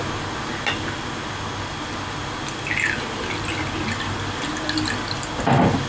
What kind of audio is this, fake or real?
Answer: real